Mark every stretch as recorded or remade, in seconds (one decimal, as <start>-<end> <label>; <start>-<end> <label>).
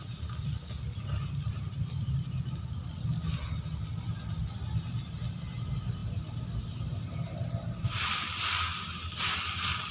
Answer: 0.0-9.9 recorded